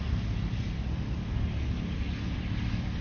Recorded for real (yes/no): yes